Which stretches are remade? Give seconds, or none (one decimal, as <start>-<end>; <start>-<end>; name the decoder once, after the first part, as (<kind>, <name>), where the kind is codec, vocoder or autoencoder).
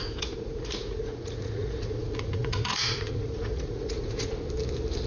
0.0-4.3 (vocoder, Vocos)